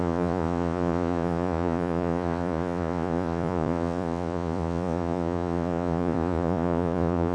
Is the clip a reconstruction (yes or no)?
yes